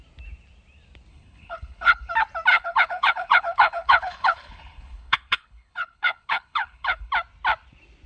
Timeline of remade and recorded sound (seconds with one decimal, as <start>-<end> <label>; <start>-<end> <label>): 0.0-1.1 recorded; 1.1-2.1 remade; 2.1-2.5 recorded; 2.5-7.1 remade; 7.1-8.1 recorded

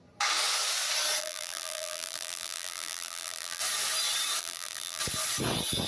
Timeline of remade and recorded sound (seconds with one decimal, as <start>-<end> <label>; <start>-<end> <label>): 0.0-1.2 recorded; 1.2-3.6 remade; 3.6-4.4 recorded; 4.4-5.0 remade; 5.0-5.9 recorded